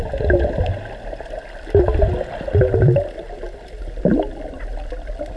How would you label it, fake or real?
real